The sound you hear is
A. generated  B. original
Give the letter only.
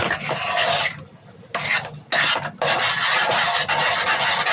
B